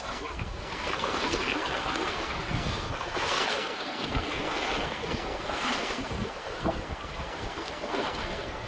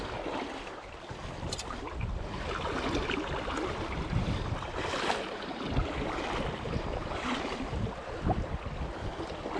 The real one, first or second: second